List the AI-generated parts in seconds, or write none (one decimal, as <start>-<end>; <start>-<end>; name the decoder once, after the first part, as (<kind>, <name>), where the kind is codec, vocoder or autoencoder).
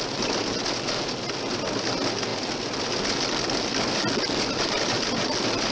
none